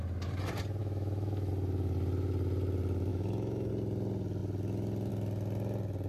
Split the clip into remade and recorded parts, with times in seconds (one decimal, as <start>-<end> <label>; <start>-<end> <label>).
0.0-0.8 recorded; 0.8-1.5 remade; 1.5-3.1 recorded; 3.1-3.7 remade; 3.7-6.1 recorded